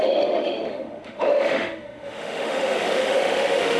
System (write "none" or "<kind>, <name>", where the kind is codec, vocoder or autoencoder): autoencoder, DAC-VAE